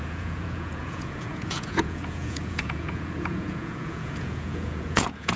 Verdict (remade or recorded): remade